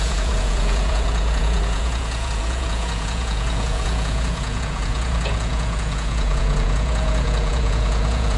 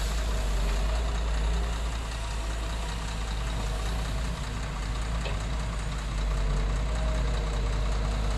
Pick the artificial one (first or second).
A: first